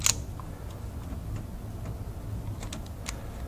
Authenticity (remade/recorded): recorded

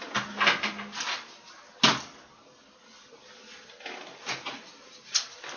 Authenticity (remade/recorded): recorded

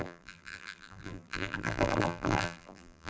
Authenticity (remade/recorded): remade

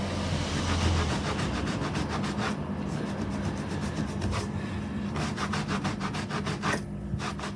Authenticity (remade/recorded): recorded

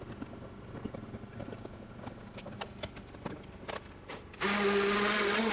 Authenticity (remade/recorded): recorded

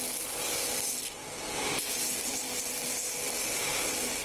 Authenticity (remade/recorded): recorded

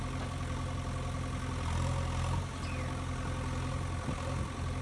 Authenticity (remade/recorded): recorded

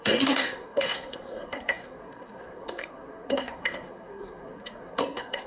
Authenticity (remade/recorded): remade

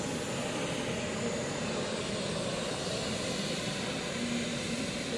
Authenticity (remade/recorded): recorded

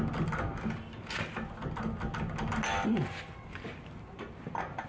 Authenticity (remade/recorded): recorded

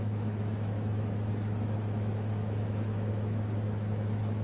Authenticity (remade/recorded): remade